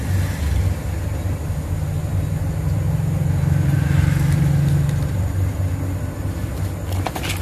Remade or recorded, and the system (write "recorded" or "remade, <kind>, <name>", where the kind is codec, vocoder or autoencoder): recorded